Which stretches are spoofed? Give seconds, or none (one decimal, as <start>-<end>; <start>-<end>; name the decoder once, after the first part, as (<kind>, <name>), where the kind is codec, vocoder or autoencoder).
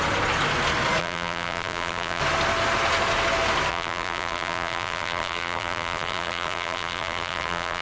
1.0-2.2 (vocoder, BigVGAN v2); 3.7-7.8